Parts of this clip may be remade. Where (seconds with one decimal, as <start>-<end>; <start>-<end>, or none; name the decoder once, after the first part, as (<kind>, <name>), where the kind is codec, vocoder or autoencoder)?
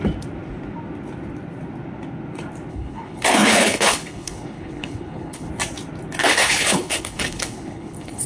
2.7-5.5 (codec, HILCodec); 6.2-8.3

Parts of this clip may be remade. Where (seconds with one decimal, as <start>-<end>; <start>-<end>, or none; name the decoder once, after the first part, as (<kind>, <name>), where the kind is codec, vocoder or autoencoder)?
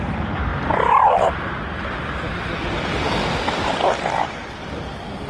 none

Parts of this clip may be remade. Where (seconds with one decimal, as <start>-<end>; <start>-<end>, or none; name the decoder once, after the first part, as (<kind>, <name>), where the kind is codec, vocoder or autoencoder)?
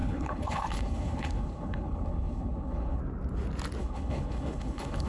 0.0-3.0 (codec, HILCodec); 3.8-5.1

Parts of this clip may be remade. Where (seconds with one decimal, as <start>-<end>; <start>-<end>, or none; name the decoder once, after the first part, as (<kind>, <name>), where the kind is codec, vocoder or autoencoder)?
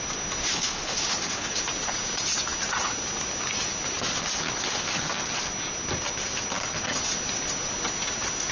0.4-1.6 (codec, HILCodec)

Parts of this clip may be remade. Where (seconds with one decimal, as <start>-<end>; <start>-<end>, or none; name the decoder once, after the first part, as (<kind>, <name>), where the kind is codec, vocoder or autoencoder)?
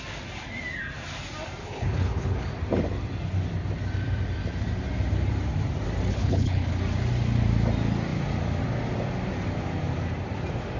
1.6-2.5 (codec, HILCodec); 6.1-6.7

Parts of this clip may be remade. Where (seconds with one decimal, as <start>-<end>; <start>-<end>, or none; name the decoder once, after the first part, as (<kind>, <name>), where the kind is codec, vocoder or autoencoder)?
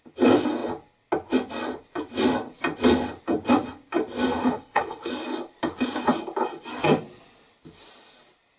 4.4-5.1 (codec, HILCodec)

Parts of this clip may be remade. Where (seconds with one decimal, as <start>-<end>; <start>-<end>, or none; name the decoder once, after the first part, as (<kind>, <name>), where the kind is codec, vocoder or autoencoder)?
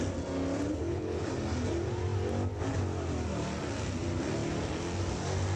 0.8-1.3 (codec, HILCodec)